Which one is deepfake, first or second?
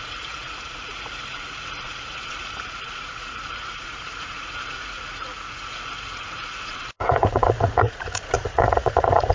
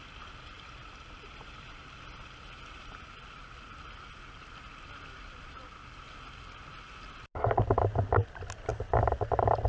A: first